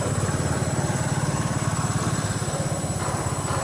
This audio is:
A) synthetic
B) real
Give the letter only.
A